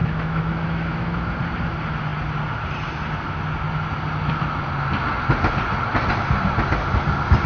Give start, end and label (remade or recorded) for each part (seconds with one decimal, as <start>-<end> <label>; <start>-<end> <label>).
0.0-1.4 remade; 1.4-7.5 recorded